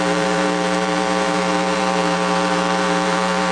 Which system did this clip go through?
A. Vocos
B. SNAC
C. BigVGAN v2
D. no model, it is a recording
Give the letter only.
C